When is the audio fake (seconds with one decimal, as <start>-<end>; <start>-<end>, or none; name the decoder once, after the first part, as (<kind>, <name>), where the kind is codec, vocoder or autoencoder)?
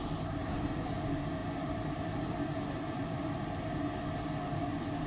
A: 0.4-0.9 (vocoder, BigVGAN v2); 1.4-3.7